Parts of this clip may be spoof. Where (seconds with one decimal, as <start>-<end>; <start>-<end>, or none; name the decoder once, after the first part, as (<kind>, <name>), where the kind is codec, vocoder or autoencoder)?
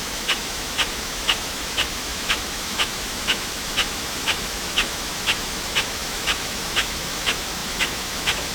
0.0-8.5 (autoencoder, DAC-VAE)